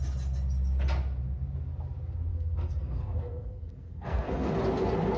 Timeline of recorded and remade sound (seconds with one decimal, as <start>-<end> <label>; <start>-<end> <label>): 0.0-2.3 recorded; 2.3-4.5 remade; 4.5-5.2 recorded